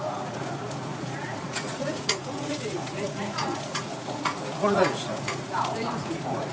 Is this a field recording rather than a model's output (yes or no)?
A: no